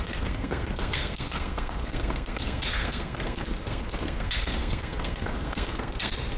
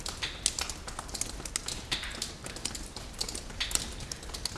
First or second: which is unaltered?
second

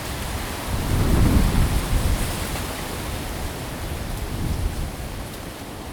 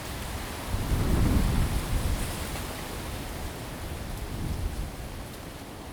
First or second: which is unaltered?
second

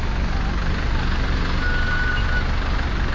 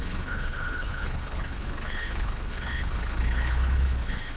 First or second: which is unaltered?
first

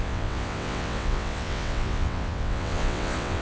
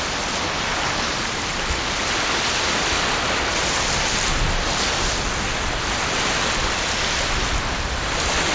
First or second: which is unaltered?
second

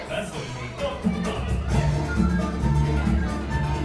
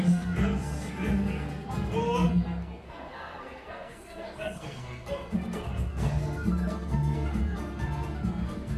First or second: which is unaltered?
first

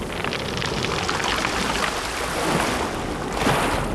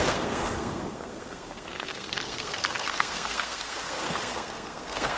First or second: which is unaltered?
first